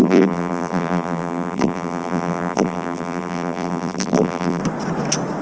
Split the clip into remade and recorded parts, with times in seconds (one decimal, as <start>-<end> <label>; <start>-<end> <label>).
0.0-4.6 remade; 4.6-5.4 recorded

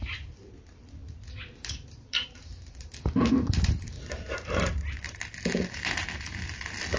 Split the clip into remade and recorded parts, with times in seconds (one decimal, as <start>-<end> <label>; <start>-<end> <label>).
0.0-1.0 recorded; 1.0-5.2 remade; 5.2-7.0 recorded

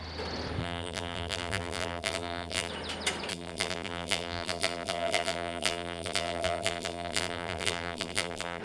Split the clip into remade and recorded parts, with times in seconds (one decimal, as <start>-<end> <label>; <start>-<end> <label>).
0.0-0.6 recorded; 0.6-2.7 remade; 2.7-3.3 recorded; 3.3-8.6 remade

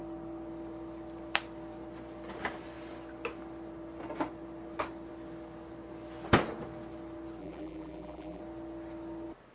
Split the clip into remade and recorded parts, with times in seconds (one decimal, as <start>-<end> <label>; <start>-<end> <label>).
0.0-7.4 recorded; 7.4-8.4 remade; 8.4-9.5 recorded

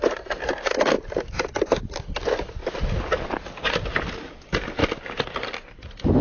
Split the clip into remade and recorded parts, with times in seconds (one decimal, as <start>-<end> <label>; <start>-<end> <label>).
0.0-2.6 remade; 2.6-4.2 recorded; 4.2-4.8 remade; 4.8-5.6 recorded; 5.6-6.2 remade